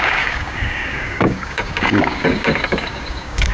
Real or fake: fake